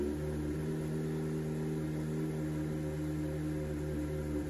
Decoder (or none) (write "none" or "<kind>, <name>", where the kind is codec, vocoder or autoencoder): none